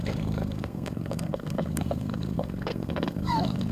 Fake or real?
fake